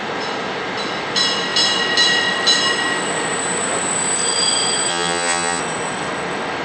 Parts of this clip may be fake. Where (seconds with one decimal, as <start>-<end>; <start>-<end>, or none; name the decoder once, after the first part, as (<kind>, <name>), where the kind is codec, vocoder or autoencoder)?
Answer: 4.9-5.6 (vocoder, HiFi-GAN)